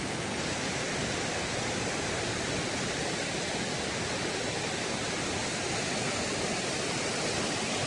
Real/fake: real